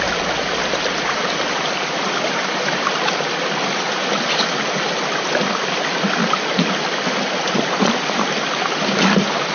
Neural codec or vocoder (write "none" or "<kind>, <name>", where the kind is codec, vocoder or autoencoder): none